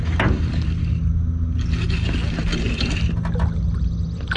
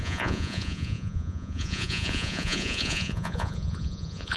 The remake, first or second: second